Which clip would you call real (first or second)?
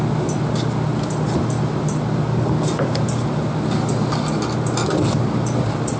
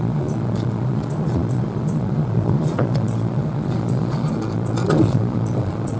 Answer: first